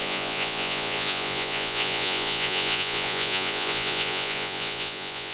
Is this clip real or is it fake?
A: fake